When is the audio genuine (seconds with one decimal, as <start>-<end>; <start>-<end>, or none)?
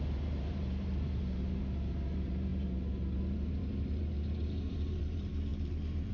none